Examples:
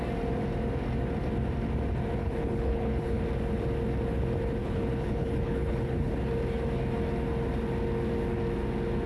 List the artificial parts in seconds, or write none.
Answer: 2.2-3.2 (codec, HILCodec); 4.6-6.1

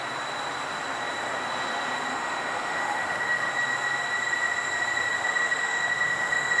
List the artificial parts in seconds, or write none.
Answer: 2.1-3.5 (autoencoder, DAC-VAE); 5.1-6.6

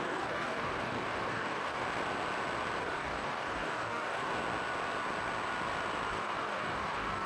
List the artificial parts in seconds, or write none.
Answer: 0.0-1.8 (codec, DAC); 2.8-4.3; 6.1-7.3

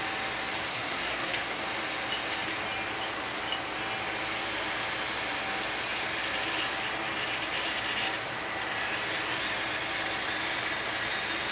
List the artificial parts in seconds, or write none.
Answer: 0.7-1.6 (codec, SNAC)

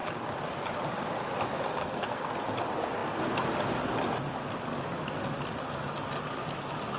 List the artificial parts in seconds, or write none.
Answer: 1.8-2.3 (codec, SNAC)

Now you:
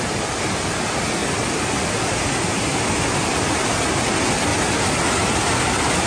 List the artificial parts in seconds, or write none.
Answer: none